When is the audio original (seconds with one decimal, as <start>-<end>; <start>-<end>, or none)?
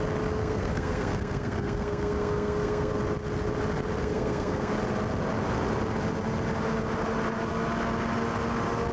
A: 0.0-0.4; 2.9-4.0; 4.7-8.9